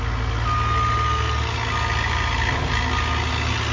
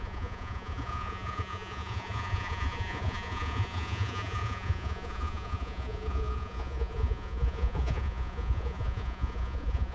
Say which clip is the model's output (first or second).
second